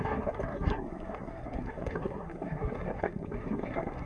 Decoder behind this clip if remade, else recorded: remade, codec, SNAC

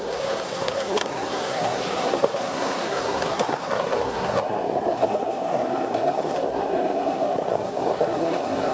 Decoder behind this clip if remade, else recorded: remade, codec, SNAC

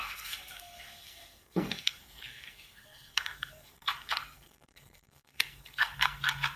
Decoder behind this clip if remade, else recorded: remade, codec, SNAC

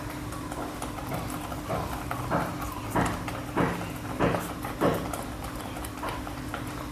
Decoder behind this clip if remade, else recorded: recorded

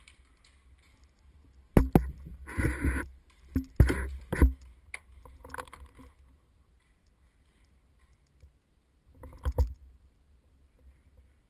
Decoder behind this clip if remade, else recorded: recorded